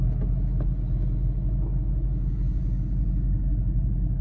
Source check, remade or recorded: recorded